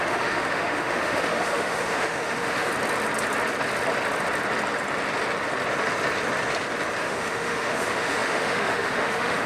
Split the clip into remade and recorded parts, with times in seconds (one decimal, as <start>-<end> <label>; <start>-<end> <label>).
0.0-2.7 remade; 2.7-7.0 recorded; 7.0-9.5 remade